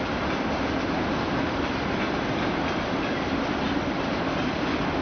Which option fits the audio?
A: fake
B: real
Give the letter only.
B